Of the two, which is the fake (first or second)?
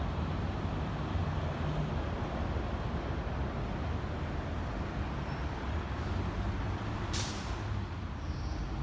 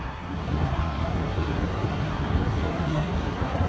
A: second